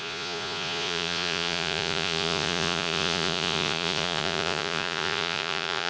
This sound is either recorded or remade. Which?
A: remade